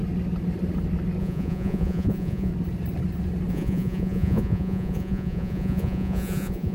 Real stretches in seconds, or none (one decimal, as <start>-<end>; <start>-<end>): 0.0-1.2; 2.5-3.5